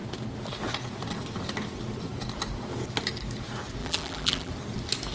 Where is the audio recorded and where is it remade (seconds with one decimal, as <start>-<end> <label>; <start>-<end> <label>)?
0.0-3.8 recorded; 3.8-4.5 remade; 4.5-5.1 recorded